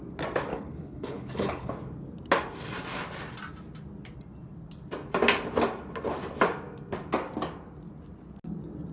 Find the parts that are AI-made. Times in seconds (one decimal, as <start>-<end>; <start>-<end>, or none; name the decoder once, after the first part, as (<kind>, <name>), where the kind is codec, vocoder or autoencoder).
0.5-1.7 (codec, HILCodec)